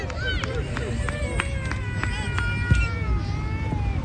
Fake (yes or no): no